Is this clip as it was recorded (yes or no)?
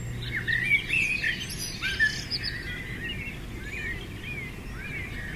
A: yes